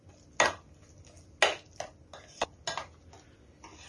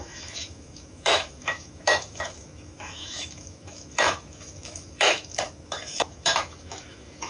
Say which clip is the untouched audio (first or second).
first